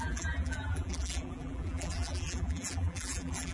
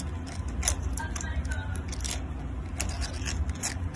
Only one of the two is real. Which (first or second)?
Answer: second